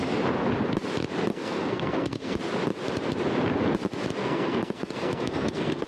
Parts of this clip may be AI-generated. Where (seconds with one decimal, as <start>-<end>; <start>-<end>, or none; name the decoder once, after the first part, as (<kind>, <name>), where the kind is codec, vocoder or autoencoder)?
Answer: 1.3-2.4 (codec, SNAC); 4.2-5.9